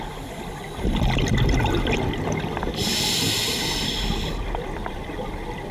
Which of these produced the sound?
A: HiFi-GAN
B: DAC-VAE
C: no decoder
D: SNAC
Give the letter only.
C